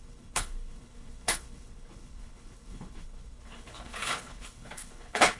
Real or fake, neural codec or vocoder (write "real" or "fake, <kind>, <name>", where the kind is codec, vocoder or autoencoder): fake, codec, HILCodec